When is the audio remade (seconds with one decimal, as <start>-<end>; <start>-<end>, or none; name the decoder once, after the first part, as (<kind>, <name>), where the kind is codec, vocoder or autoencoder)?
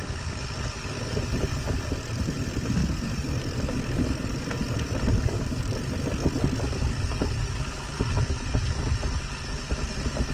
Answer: 5.1-5.7 (codec, DAC)